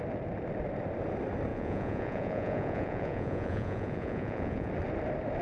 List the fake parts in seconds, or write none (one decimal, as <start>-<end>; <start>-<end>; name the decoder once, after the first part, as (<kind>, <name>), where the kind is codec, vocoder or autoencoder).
1.5-4.7 (vocoder, Vocos)